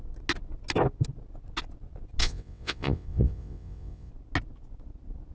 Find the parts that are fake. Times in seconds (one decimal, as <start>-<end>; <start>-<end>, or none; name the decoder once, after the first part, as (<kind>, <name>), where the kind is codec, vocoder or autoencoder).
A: 2.2-4.1 (vocoder, WaveNeXt)